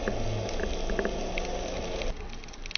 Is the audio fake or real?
real